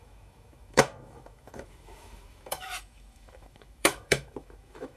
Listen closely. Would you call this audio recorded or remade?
remade